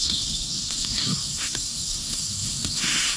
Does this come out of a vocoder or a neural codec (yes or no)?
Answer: yes